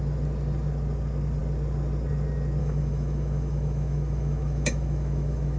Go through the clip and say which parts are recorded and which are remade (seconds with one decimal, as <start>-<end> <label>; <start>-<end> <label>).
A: 0.0-2.6 recorded; 2.6-5.6 remade